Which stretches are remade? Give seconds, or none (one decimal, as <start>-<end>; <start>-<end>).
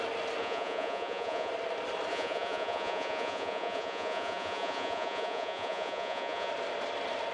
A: 0.4-1.5; 2.1-6.5